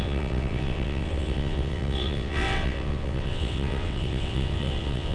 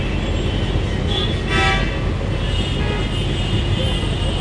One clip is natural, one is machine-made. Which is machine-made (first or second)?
first